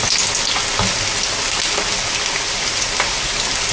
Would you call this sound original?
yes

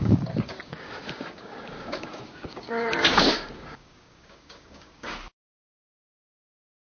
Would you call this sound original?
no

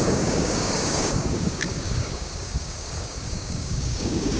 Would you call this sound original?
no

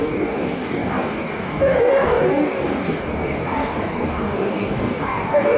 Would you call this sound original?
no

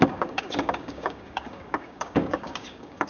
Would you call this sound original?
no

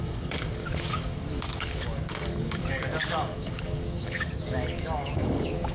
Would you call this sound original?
no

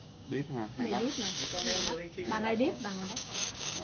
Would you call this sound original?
no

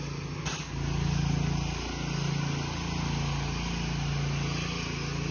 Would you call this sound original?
yes